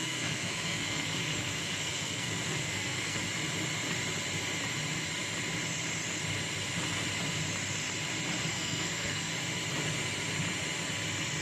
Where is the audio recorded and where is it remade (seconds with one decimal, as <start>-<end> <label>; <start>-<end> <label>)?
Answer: 0.0-3.2 remade; 3.2-8.5 recorded; 8.5-9.3 remade; 9.3-11.4 recorded